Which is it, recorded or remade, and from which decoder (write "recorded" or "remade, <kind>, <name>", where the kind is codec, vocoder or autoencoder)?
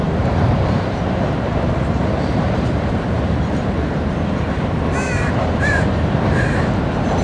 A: remade, vocoder, BigVGAN v2